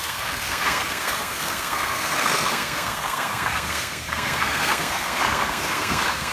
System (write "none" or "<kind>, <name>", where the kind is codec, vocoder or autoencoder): codec, SNAC